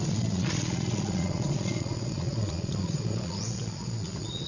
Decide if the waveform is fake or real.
fake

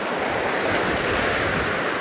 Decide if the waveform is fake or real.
fake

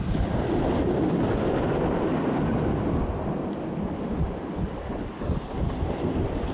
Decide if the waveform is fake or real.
real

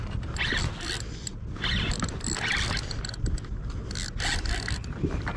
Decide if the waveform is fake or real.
real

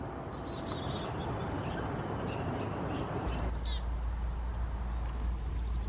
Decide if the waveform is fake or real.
real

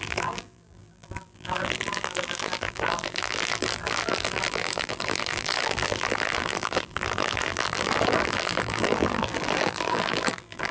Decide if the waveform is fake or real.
fake